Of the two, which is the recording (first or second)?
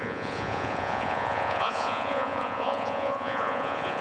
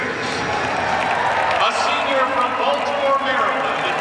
second